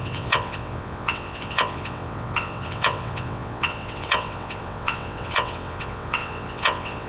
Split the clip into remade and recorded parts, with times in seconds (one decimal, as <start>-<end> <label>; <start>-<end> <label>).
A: 0.0-7.1 remade